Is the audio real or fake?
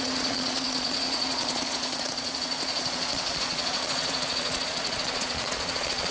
fake